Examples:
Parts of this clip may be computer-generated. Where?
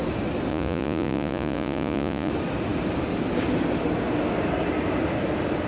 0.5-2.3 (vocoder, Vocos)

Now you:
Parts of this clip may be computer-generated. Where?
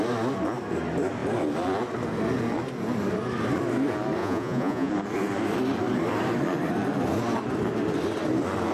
4.2-4.9 (vocoder, Vocos)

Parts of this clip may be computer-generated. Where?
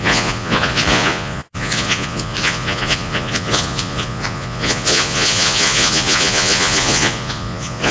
0.0-7.9 (vocoder, Vocos)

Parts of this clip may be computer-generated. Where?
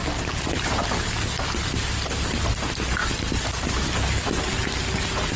none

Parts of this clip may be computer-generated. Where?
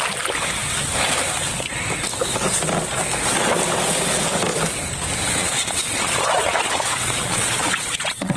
5.4-8.4 (vocoder, Vocos)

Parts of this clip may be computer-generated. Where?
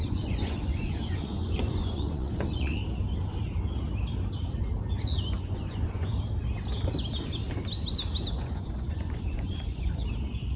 0.0-2.8 (vocoder, Vocos); 5.4-6.1; 8.3-10.0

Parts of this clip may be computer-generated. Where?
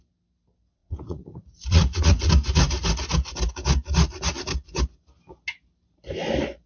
0.8-2.3 (vocoder, Vocos)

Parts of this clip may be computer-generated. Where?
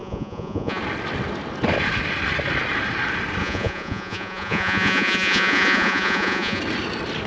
0.0-0.8 (vocoder, Vocos); 3.4-6.6